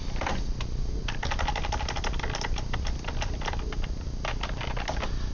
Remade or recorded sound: recorded